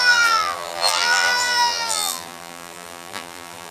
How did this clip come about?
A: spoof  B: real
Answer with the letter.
A